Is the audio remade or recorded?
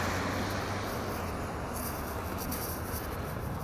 recorded